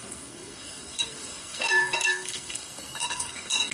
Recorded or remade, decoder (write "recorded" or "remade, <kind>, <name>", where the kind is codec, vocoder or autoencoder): remade, codec, SNAC